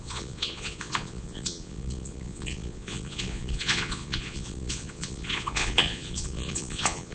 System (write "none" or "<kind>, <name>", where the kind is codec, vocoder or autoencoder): vocoder, Vocos